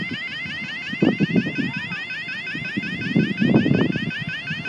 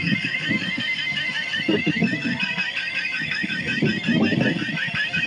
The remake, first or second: second